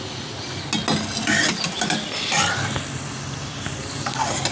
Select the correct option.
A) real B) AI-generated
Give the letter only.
A